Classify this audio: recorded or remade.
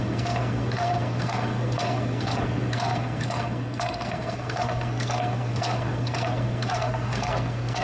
remade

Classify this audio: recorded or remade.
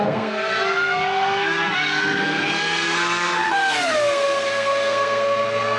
remade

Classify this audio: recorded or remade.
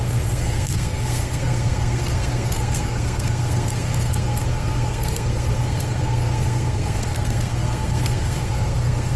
remade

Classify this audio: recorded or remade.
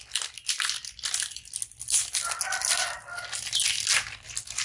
recorded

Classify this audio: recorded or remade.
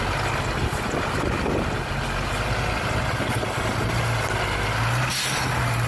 recorded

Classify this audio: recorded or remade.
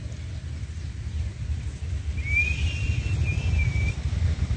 recorded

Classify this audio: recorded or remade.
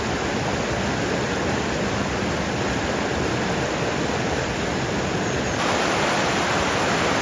recorded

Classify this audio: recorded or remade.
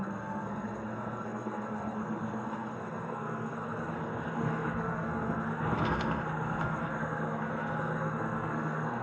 remade